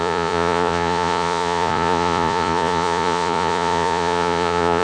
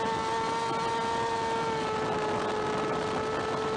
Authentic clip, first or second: second